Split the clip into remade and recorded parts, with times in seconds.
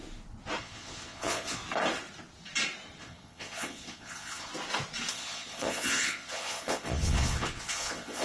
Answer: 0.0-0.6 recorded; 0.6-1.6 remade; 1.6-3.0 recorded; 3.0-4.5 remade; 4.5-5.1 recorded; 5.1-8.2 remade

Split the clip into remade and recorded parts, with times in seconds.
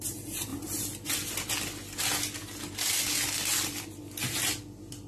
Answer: 0.0-5.1 recorded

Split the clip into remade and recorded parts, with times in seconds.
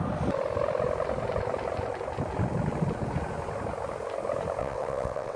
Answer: 0.0-4.6 recorded; 4.6-5.4 remade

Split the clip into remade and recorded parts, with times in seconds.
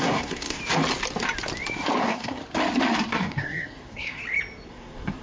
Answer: 0.0-0.6 remade; 0.6-2.0 recorded; 2.0-2.4 remade; 2.4-3.1 recorded; 3.1-4.2 remade; 4.2-4.7 recorded; 4.7-5.2 remade